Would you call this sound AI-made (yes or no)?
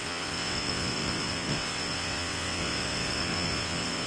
yes